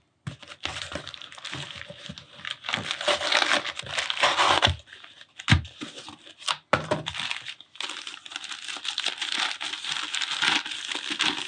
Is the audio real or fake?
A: real